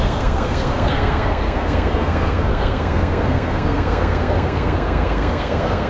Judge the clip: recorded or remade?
remade